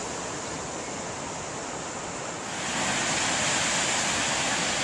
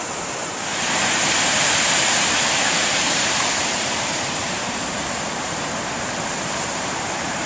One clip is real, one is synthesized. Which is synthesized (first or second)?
second